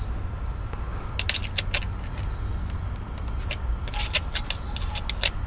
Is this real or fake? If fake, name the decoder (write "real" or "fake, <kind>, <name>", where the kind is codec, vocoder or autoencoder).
real